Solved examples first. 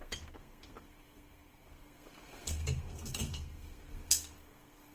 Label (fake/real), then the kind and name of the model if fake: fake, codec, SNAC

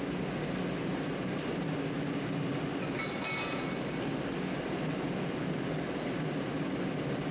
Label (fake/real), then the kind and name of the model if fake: real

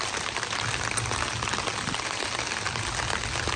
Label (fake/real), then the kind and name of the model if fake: real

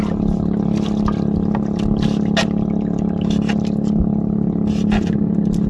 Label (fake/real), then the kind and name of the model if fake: real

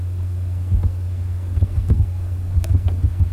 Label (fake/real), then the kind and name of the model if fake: fake, codec, SNAC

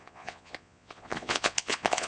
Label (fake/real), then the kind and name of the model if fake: fake, vocoder, Vocos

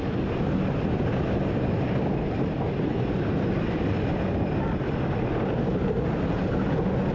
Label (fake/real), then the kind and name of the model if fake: real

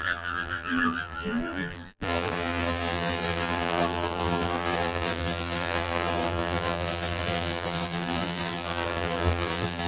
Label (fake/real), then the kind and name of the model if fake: fake, vocoder, BigVGAN v2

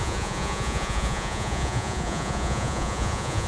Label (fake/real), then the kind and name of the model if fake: fake, vocoder, Vocos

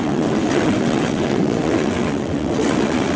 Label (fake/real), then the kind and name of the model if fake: fake, vocoder, WaveNeXt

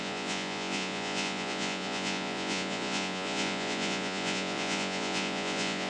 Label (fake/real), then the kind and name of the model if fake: fake, vocoder, Vocos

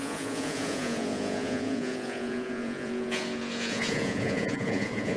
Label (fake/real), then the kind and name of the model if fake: fake, vocoder, Vocos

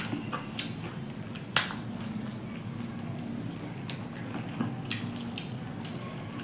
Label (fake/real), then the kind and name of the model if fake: real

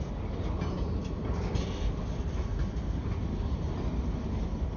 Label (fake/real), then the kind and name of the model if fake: real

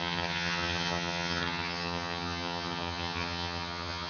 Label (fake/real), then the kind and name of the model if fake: fake, vocoder, HiFi-GAN